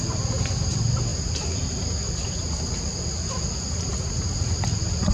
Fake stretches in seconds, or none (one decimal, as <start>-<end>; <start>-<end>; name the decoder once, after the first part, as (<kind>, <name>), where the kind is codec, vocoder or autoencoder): none